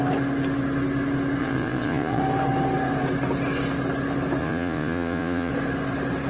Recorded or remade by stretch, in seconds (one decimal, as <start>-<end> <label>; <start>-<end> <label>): 0.0-1.4 recorded; 1.4-2.2 remade; 2.2-4.4 recorded; 4.4-5.5 remade; 5.5-6.3 recorded

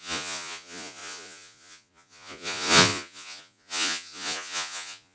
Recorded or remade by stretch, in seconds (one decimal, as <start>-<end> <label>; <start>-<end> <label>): 0.0-5.1 remade